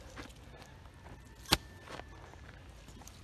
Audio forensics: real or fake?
real